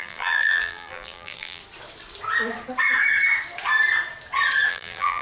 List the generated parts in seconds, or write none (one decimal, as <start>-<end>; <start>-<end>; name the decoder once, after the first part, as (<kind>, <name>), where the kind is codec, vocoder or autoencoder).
0.0-1.6 (vocoder, BigVGAN v2); 4.7-5.2